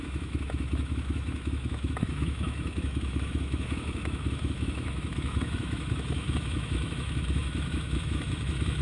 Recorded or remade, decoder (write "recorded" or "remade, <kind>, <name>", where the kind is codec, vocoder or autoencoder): remade, autoencoder, DAC-VAE